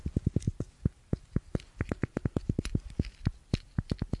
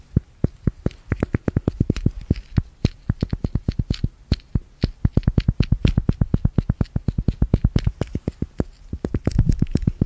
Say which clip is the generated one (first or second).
first